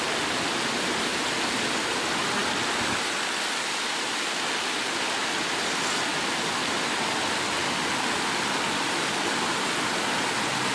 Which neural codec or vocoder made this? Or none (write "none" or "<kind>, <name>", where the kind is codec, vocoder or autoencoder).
none